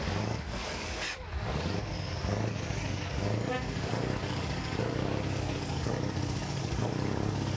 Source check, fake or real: fake